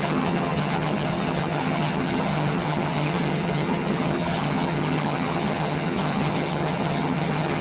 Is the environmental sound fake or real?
fake